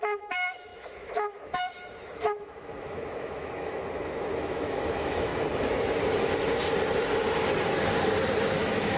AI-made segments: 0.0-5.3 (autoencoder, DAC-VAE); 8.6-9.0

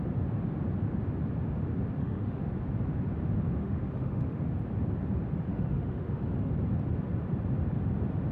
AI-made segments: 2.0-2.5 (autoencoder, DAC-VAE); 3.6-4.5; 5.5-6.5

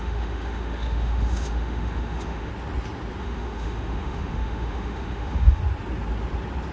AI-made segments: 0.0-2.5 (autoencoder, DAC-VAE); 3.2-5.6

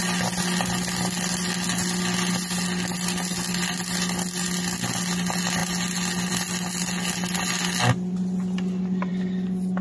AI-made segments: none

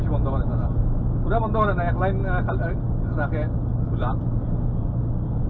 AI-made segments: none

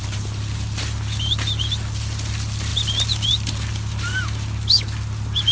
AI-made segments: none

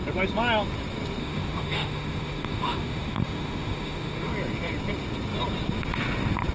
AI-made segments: 1.2-4.3 (autoencoder, DAC-VAE)